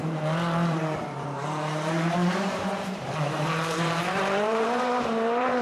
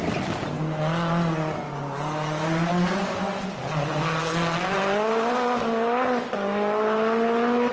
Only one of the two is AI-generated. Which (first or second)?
first